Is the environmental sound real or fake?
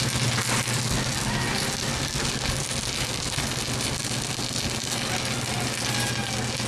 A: real